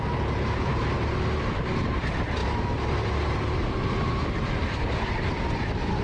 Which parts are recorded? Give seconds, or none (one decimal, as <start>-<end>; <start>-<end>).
0.0-6.0